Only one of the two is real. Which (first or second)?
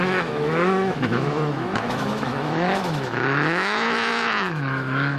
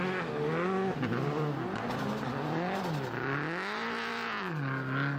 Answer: second